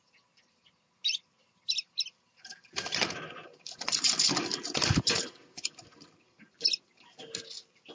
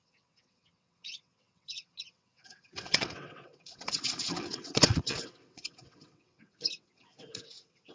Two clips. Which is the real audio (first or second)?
first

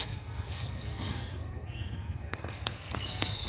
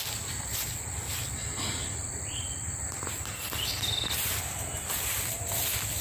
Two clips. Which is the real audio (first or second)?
second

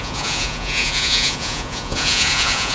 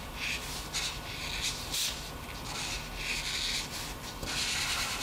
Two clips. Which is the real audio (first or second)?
second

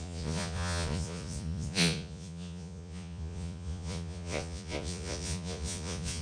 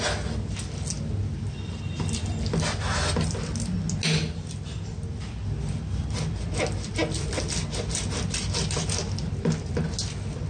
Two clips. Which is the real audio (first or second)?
second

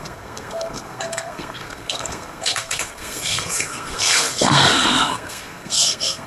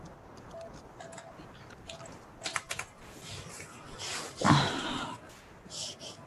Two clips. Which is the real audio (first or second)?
second